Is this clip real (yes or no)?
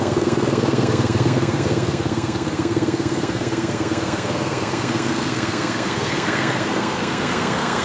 no